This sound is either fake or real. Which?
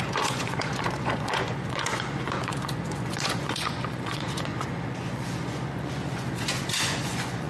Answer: fake